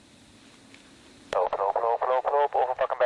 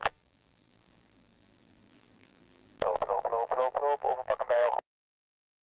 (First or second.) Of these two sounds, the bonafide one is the first